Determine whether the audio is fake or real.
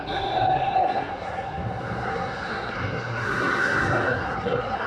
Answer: fake